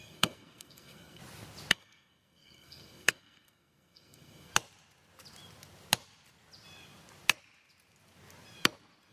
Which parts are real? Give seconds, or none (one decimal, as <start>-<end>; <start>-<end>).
1.2-1.7; 4.5-9.1